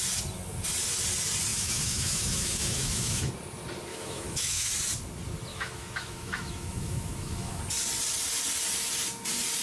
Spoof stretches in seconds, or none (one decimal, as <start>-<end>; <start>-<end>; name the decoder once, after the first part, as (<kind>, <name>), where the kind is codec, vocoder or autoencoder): 1.5-3.3 (autoencoder, DAC-VAE); 3.9-4.7; 5.5-7.6